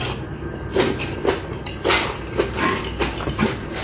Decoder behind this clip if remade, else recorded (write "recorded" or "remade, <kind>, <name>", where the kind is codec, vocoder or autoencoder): recorded